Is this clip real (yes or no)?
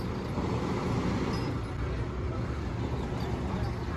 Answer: yes